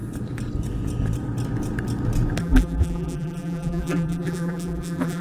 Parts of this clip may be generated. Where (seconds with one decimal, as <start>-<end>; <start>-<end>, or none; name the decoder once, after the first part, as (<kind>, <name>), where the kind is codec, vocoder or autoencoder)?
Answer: 2.4-5.2 (vocoder, BigVGAN v2)